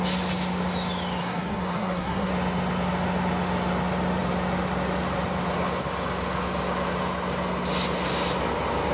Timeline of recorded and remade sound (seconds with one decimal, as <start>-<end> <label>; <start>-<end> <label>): 0.0-1.2 recorded; 1.2-2.3 remade; 2.3-8.9 recorded